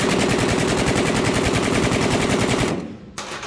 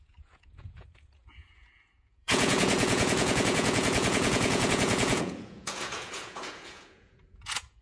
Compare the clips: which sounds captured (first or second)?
first